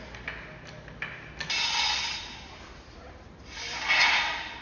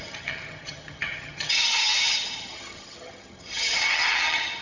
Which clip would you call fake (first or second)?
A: second